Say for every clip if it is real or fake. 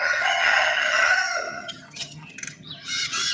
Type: fake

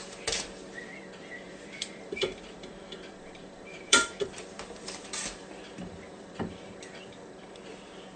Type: fake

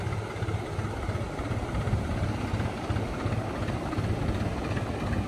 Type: real